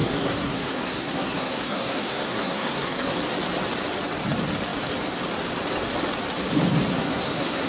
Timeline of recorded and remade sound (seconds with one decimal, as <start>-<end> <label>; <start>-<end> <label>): 0.0-3.1 remade; 3.1-6.9 recorded; 6.9-7.7 remade